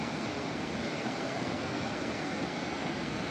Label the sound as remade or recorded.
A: remade